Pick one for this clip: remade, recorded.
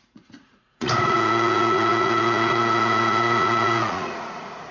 remade